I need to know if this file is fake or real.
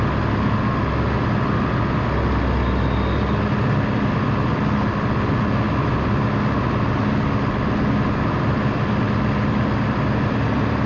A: real